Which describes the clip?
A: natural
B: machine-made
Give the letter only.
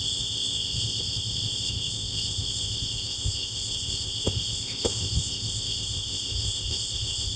B